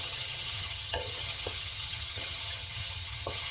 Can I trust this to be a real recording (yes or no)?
no